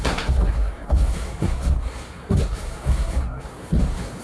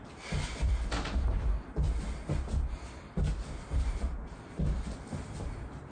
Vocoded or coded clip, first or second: first